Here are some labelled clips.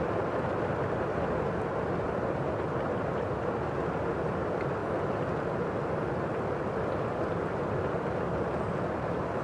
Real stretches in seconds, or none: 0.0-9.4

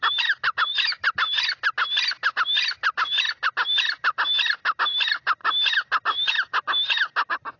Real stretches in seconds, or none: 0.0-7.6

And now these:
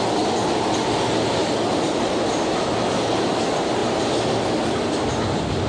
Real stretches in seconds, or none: 0.0-5.7